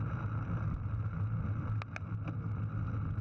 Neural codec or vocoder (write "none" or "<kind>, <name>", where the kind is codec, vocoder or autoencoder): none